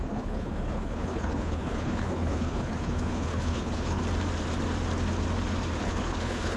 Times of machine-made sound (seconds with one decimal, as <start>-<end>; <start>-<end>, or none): 0.0-4.0; 5.8-6.6